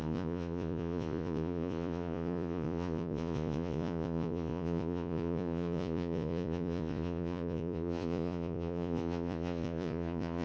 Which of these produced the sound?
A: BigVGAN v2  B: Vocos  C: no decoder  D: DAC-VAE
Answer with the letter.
B